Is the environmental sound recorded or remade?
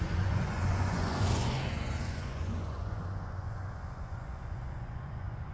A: remade